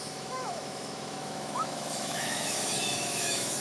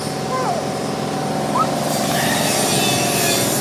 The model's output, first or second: first